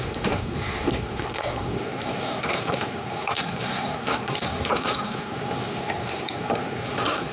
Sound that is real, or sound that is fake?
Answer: fake